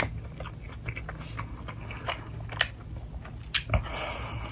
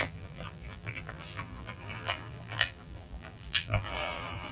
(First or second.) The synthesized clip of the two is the second